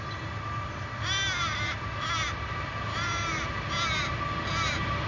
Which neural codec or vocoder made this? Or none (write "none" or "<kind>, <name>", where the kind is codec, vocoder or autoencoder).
none